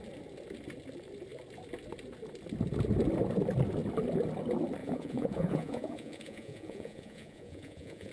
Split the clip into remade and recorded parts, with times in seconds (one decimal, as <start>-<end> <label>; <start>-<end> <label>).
0.0-4.8 recorded; 4.8-8.1 remade

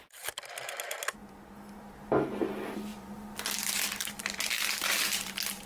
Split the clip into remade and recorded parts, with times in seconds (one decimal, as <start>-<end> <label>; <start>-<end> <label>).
0.0-5.7 recorded